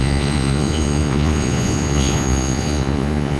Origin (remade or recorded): remade